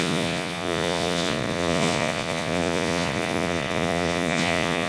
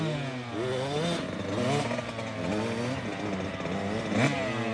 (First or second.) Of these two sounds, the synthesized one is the first